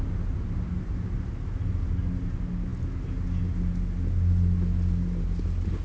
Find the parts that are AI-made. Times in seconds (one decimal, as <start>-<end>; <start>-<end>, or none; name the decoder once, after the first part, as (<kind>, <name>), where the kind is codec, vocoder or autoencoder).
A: none